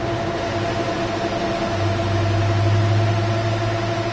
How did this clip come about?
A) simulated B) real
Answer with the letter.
B